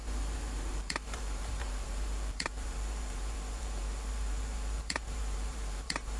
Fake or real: fake